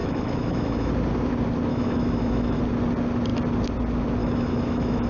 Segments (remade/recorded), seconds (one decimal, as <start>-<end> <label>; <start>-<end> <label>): 0.0-0.9 remade; 0.9-1.7 recorded; 1.7-2.6 remade; 2.6-4.2 recorded; 4.2-5.1 remade